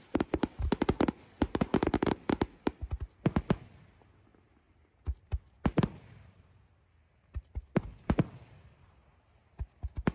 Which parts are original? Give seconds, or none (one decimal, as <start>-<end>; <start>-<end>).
0.0-10.1